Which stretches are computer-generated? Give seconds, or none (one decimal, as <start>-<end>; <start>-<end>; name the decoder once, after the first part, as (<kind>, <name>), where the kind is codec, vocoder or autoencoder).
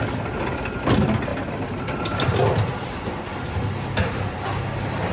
none